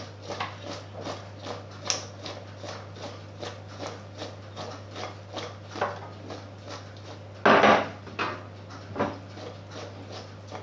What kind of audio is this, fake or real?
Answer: real